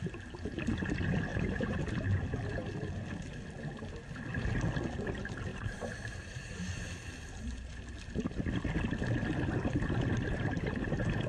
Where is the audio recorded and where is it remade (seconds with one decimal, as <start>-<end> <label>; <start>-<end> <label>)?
0.0-1.3 recorded; 1.3-2.2 remade; 2.2-5.5 recorded; 5.5-6.7 remade; 6.7-11.3 recorded